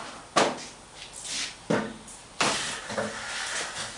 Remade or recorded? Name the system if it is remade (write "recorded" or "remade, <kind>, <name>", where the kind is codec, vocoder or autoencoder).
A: recorded